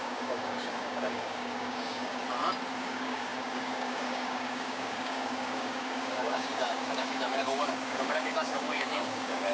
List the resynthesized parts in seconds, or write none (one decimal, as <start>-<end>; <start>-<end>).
0.0-2.2; 2.7-9.5